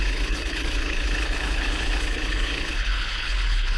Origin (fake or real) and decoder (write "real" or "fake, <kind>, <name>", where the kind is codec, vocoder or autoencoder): fake, codec, HILCodec